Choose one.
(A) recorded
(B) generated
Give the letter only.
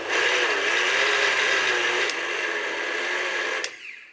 A